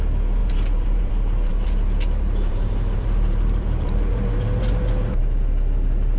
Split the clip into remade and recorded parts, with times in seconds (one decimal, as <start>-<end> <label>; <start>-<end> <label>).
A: 0.0-0.4 recorded; 0.4-1.1 remade; 1.1-1.5 recorded; 1.5-5.2 remade; 5.2-6.2 recorded

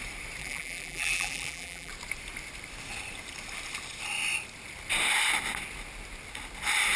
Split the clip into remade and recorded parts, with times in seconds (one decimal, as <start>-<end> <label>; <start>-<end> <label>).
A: 0.0-0.4 recorded; 0.4-1.9 remade; 1.9-7.0 recorded

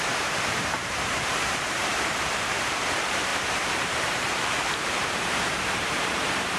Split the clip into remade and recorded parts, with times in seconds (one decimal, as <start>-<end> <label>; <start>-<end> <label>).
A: 0.0-6.6 remade

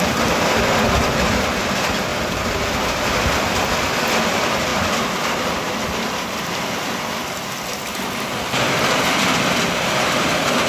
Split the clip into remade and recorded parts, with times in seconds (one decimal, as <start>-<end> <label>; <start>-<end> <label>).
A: 0.0-2.1 remade; 2.1-2.6 recorded; 2.6-10.7 remade

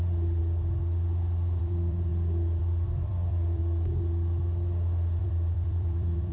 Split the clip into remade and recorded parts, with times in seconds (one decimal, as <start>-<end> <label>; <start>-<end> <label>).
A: 0.0-0.4 remade; 0.4-1.6 recorded; 1.6-2.1 remade; 2.1-2.6 recorded; 2.6-3.6 remade; 3.6-5.2 recorded; 5.2-6.3 remade

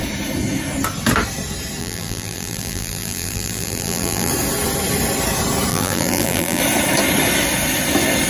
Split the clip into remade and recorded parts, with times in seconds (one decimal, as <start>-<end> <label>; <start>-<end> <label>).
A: 0.0-1.8 recorded; 1.8-4.3 remade; 4.3-5.7 recorded; 5.7-6.6 remade; 6.6-8.3 recorded

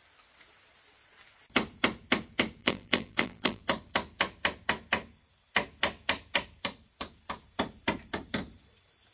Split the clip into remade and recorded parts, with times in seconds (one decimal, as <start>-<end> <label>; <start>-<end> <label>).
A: 0.0-2.6 recorded; 2.6-3.6 remade; 3.6-9.1 recorded

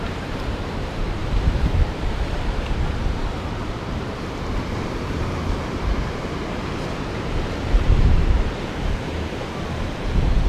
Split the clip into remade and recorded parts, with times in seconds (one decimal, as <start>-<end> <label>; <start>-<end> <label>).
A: 0.0-10.5 remade